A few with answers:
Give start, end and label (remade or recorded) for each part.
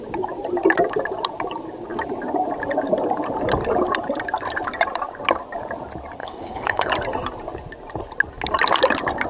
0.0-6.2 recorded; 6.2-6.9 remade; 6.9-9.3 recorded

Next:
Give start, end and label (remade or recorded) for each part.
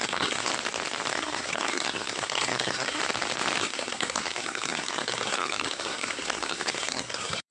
0.0-0.5 remade; 0.5-1.1 recorded; 1.1-3.0 remade; 3.0-3.6 recorded; 3.6-7.5 remade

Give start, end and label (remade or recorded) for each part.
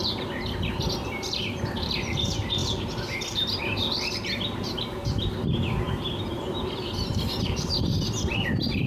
0.0-5.0 remade; 5.0-5.6 recorded; 5.6-8.9 remade